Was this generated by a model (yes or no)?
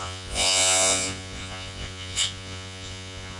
yes